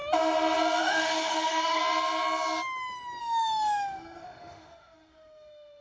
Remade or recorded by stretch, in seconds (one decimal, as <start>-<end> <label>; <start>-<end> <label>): 0.0-0.8 recorded; 0.8-1.8 remade; 1.8-3.2 recorded; 3.2-5.8 remade